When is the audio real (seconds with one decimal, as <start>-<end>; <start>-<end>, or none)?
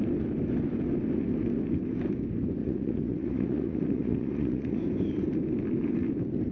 0.0-2.6; 4.8-6.5